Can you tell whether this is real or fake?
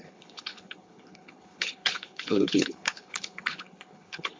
fake